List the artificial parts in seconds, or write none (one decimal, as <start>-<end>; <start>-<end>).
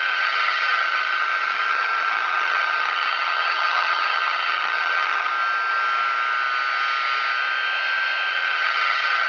0.0-5.3; 8.3-9.3